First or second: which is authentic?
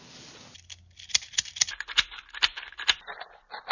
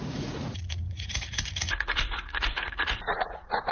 first